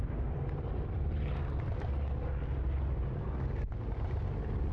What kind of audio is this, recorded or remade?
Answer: remade